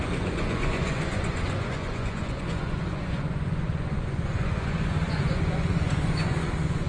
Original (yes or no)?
no